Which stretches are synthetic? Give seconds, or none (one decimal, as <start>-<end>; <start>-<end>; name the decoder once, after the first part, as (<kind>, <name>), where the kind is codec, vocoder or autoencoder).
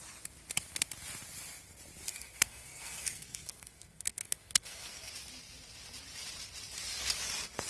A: 2.1-5.1 (codec, SNAC)